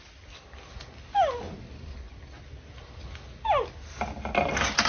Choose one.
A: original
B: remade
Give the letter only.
A